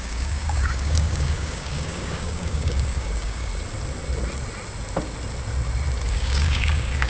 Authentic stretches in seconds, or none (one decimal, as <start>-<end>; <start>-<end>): 3.5-6.1

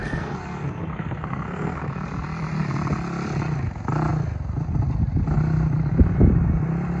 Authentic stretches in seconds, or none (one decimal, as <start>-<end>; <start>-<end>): 1.8-7.0

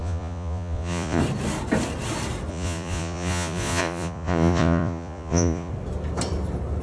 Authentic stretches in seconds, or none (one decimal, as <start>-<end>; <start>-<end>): 1.2-2.5; 5.7-6.8

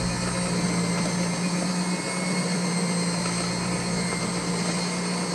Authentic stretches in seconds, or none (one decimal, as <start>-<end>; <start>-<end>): 0.0-5.3

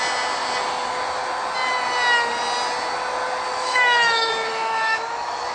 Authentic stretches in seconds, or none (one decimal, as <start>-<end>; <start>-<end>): 0.0-3.5

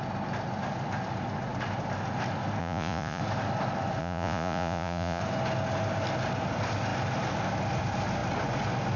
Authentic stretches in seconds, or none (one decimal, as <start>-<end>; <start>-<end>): 0.0-2.6; 3.2-4.0; 5.2-9.0